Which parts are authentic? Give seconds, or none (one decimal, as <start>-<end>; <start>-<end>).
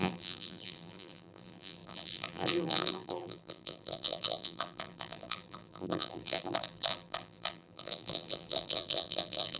none